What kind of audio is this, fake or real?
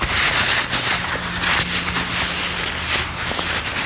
real